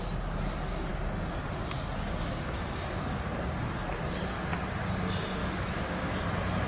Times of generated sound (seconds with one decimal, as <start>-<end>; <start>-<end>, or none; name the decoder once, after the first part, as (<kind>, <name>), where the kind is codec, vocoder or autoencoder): 5.4-6.2 (autoencoder, DAC-VAE)